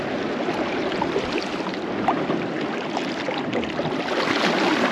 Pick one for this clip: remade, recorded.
recorded